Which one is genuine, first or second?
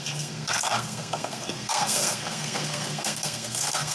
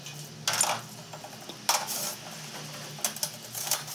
second